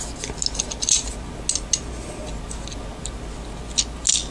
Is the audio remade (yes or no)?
no